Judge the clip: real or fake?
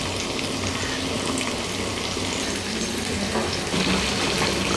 real